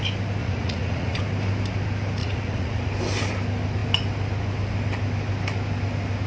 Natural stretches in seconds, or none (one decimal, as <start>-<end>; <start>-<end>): 0.0-0.4; 1.2-2.2; 2.9-6.3